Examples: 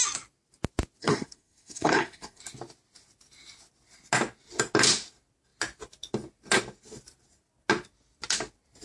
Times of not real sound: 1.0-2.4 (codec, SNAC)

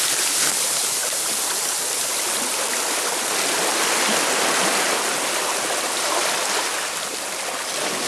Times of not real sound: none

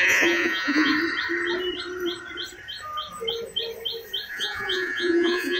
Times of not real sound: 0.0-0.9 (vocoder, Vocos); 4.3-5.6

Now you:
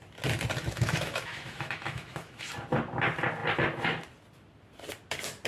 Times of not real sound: 0.6-2.5 (autoencoder, DAC-VAE)